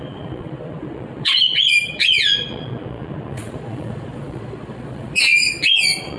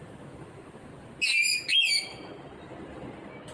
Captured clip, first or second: second